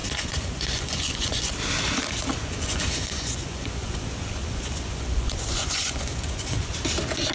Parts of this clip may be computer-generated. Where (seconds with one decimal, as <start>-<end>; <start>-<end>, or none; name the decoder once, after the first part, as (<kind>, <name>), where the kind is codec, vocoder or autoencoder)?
0.0-1.5 (vocoder, Vocos); 2.3-6.7